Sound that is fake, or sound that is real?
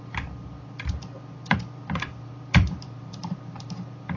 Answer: fake